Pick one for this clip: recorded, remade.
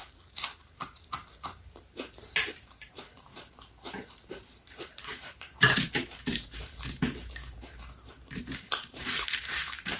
remade